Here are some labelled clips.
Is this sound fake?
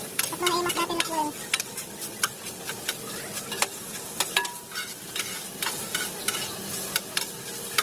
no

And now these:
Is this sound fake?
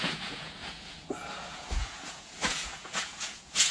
yes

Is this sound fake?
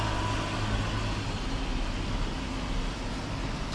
no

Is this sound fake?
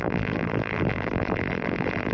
yes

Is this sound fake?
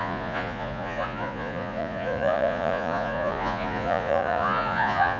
yes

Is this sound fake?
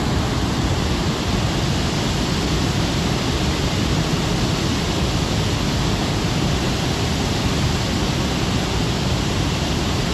no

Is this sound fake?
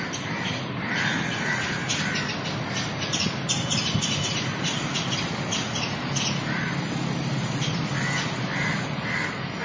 no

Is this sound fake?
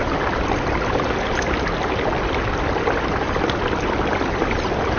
no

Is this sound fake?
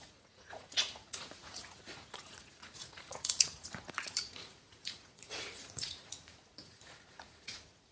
yes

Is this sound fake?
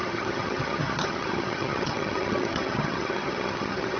yes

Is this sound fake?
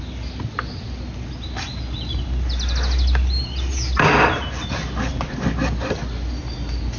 no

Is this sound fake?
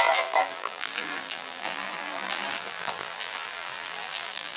yes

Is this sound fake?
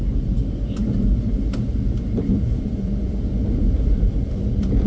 yes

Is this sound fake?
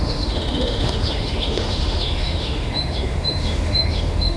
yes